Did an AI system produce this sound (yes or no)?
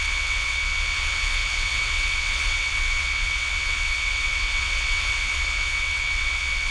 yes